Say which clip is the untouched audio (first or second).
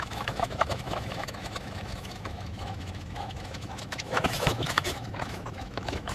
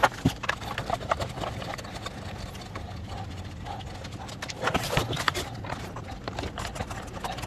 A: second